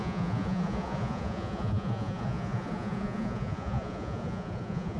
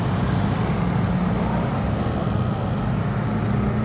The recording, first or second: second